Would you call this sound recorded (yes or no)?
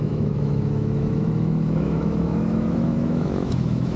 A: no